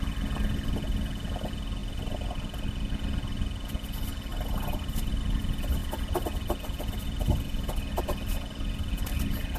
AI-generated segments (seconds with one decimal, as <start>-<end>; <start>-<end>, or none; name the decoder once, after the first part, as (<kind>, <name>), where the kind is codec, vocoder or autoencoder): 4.3-5.2 (vocoder, BigVGAN v2)